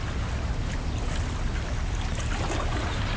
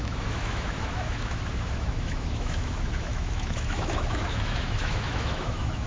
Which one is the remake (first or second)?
second